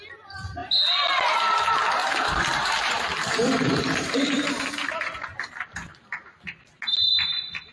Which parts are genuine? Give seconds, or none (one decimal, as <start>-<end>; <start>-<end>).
0.0-2.0; 6.6-7.7